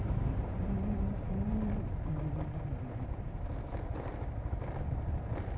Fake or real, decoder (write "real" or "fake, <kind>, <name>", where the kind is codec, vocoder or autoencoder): fake, vocoder, BigVGAN v2